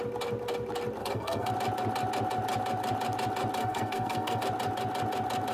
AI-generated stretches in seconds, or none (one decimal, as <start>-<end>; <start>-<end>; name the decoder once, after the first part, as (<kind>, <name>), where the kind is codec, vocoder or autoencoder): 1.0-1.5 (codec, SNAC); 3.6-4.4